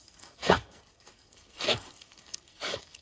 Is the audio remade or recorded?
remade